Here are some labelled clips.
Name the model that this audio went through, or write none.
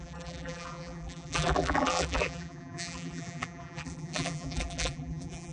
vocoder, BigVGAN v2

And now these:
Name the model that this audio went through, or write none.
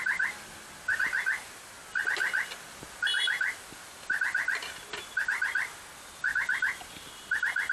none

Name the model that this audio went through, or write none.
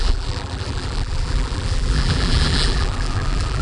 vocoder, BigVGAN v2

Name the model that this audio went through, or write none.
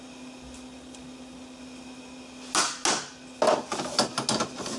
none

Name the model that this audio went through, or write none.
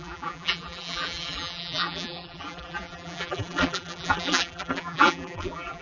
vocoder, BigVGAN v2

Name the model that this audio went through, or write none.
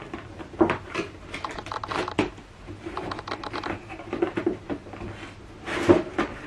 none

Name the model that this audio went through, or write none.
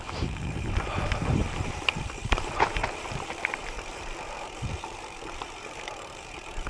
vocoder, BigVGAN v2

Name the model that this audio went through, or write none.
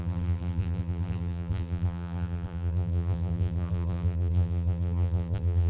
vocoder, BigVGAN v2